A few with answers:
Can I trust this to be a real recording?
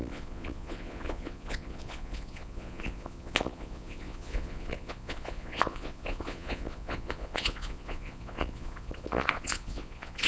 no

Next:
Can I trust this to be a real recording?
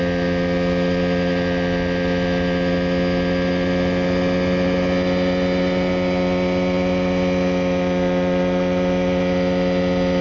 yes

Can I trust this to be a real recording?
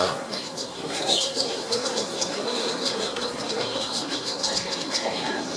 no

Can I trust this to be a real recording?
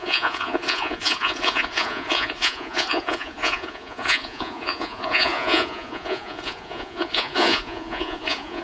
no